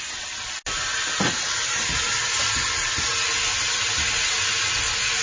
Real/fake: real